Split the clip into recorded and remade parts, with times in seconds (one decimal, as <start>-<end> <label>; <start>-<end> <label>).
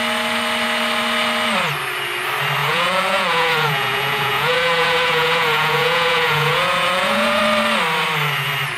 0.0-2.6 recorded; 2.6-7.4 remade; 7.4-8.8 recorded